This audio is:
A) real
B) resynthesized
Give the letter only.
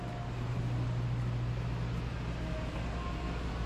A